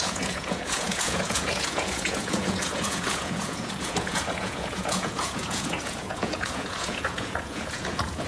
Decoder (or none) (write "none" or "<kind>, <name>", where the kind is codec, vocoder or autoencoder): vocoder, Vocos